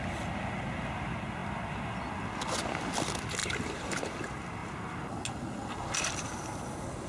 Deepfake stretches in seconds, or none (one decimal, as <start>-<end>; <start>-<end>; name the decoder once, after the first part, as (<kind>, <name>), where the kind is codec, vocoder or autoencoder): 3.4-4.1 (vocoder, BigVGAN v2)